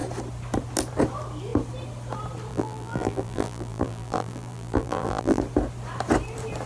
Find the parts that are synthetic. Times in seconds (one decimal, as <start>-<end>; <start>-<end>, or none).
2.5-5.4